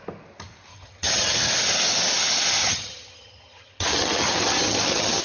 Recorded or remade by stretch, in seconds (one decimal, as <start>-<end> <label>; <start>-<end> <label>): 0.0-0.7 recorded; 0.7-1.5 remade; 1.5-2.6 recorded; 2.6-5.2 remade